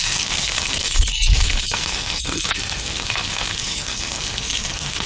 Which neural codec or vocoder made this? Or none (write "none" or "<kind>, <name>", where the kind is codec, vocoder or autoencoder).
codec, SNAC